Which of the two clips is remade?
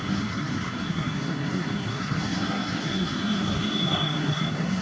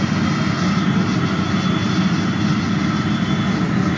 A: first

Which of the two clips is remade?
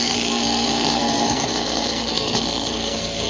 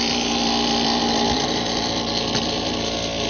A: first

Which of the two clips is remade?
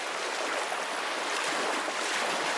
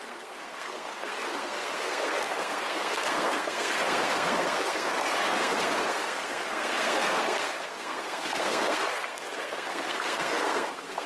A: second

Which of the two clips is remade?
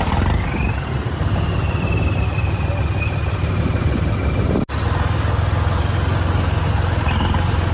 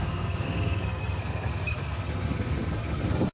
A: second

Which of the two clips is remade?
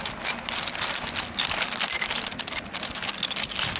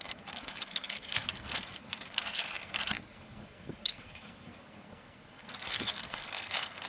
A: second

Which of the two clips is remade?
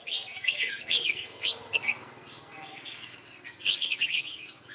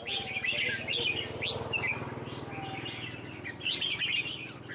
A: first